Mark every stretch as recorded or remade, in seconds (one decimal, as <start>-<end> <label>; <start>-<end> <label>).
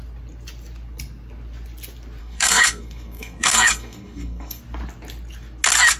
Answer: 0.0-2.2 recorded; 2.2-4.6 remade; 4.6-6.0 recorded